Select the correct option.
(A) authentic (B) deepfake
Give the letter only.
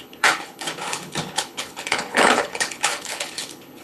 B